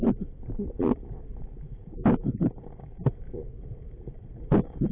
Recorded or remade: recorded